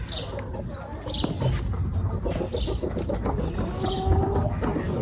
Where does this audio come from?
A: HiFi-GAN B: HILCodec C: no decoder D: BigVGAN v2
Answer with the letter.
C